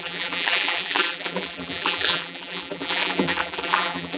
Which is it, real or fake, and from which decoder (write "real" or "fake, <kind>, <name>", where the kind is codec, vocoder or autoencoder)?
fake, vocoder, BigVGAN v2